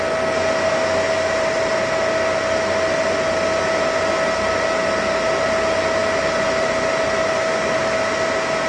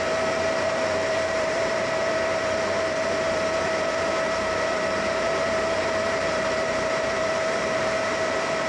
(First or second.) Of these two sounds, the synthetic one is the second